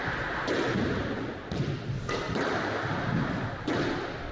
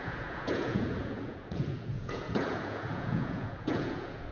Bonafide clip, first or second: first